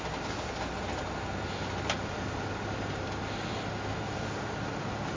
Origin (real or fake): real